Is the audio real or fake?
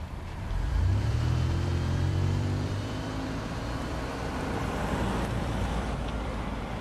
fake